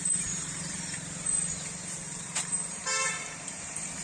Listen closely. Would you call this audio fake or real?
fake